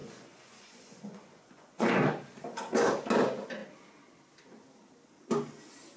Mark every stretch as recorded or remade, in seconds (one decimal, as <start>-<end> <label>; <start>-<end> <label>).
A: 0.0-1.9 remade; 1.9-6.0 recorded